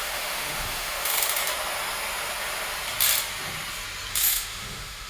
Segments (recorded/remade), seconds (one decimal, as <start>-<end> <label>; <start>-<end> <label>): 0.0-1.4 remade; 1.4-4.1 recorded; 4.1-5.1 remade